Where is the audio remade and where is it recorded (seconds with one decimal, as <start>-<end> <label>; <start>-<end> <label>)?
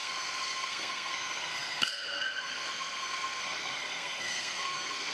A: 0.0-5.1 remade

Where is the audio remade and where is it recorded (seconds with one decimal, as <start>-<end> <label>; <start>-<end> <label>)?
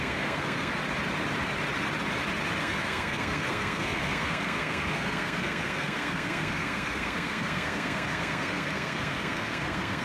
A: 0.0-0.7 remade; 0.7-2.6 recorded; 2.6-10.0 remade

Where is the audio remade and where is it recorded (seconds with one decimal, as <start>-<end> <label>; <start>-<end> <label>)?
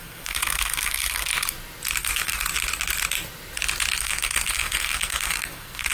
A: 0.0-1.3 remade; 1.3-2.0 recorded; 2.0-2.5 remade; 2.5-4.0 recorded; 4.0-5.9 remade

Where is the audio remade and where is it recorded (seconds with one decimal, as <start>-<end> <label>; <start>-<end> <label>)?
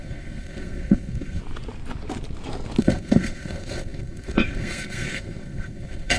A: 0.0-1.4 remade; 1.4-2.8 recorded; 2.8-6.2 remade